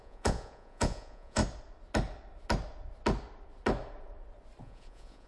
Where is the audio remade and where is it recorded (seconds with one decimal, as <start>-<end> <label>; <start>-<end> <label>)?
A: 0.0-1.4 remade; 1.4-4.6 recorded; 4.6-5.3 remade

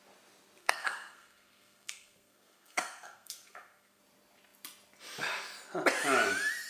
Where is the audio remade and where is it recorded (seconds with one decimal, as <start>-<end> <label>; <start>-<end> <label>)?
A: 0.0-0.6 recorded; 0.6-4.0 remade; 4.0-6.7 recorded